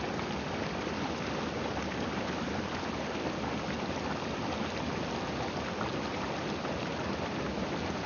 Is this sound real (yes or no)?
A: yes